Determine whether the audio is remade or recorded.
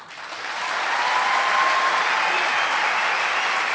recorded